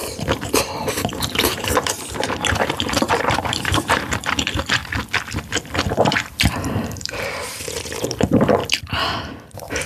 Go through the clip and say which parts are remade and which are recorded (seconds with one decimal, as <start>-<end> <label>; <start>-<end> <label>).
0.0-4.8 remade; 4.8-5.9 recorded; 5.9-8.6 remade; 8.6-9.5 recorded; 9.5-9.9 remade